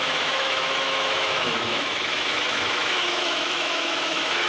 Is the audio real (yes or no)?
no